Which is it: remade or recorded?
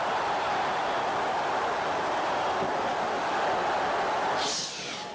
recorded